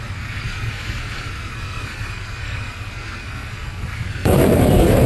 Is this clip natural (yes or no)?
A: no